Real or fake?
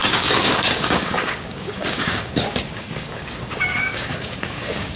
fake